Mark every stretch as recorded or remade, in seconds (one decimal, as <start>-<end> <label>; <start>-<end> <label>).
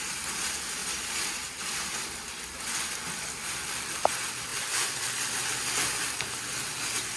0.0-0.8 recorded; 0.8-3.5 remade; 3.5-7.2 recorded